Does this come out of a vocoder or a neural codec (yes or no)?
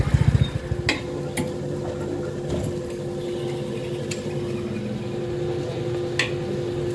no